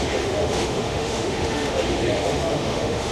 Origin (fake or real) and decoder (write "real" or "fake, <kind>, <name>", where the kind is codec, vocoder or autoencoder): fake, autoencoder, DAC-VAE